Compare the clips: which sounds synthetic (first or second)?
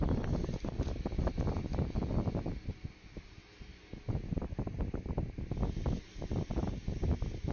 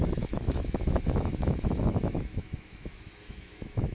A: second